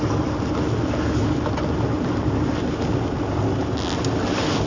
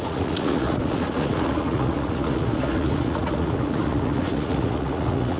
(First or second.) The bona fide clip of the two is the first